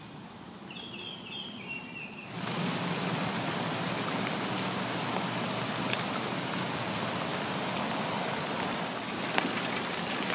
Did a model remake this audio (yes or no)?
no